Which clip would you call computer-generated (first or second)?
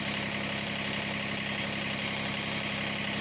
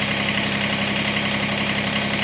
second